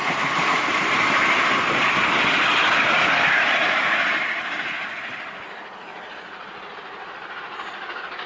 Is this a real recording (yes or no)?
yes